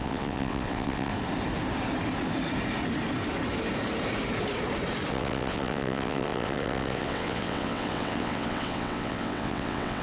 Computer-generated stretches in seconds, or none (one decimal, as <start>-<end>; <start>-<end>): 0.0-1.1; 5.1-10.0